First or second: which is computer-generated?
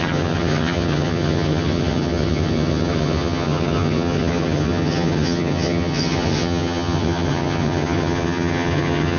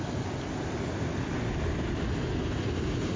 first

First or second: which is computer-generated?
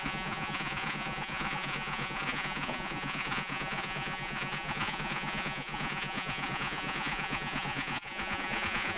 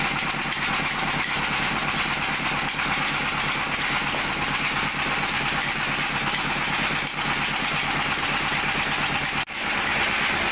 first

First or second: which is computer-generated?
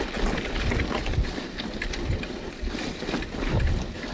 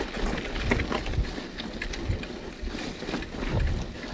first